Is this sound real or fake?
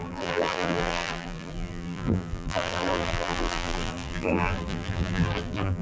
fake